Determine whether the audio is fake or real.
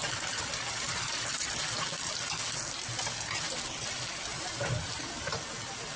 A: real